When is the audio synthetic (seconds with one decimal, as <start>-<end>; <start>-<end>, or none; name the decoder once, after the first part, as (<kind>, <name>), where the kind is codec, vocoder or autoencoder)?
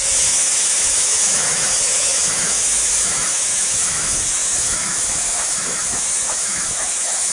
0.0-7.3 (autoencoder, DAC-VAE)